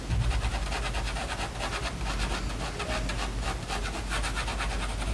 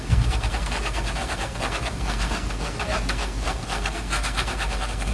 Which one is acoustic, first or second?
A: first